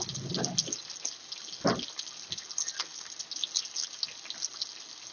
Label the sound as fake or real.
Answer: real